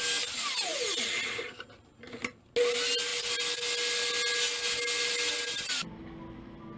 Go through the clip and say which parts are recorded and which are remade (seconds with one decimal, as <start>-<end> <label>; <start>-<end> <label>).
0.0-6.8 recorded